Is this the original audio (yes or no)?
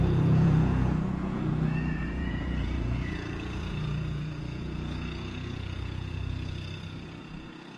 no